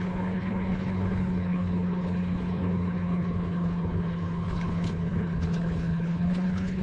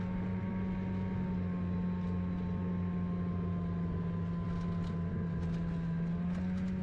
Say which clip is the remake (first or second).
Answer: first